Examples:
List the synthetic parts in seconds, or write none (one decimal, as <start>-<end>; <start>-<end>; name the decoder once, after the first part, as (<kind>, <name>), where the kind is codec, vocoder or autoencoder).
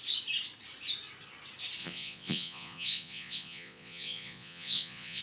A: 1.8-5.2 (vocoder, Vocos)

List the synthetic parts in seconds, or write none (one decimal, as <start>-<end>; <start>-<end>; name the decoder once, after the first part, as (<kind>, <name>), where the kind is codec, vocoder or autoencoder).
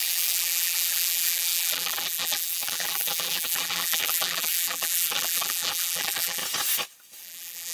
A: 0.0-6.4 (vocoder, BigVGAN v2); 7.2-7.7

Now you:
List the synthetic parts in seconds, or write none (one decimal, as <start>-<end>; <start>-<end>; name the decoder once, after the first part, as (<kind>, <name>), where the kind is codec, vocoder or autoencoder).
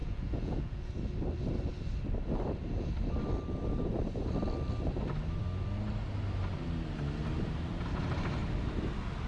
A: 0.0-0.9 (vocoder, Vocos)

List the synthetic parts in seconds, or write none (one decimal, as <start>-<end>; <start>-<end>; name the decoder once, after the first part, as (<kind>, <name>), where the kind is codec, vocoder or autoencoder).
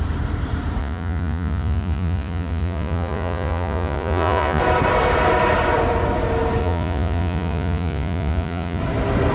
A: 0.8-4.6 (vocoder, Vocos); 6.6-8.8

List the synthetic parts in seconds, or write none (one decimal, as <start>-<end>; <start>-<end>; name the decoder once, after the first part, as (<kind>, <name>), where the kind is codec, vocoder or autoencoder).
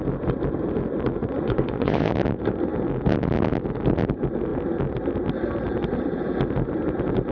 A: 1.2-2.1 (vocoder, Vocos)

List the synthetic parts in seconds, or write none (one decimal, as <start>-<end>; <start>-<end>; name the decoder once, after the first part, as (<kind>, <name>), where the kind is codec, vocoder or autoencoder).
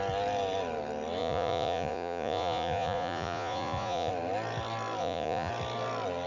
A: 1.2-4.1 (vocoder, Vocos); 5.0-5.5